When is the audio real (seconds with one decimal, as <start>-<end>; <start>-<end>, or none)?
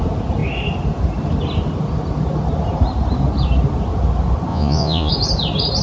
0.0-4.5; 5.1-5.8